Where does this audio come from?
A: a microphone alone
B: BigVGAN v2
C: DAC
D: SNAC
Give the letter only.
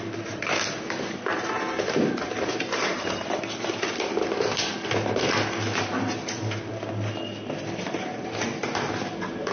A